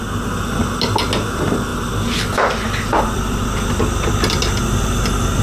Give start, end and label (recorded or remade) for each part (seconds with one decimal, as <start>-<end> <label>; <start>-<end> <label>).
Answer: 0.0-5.4 recorded